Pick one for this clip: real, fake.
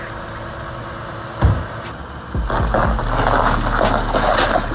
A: real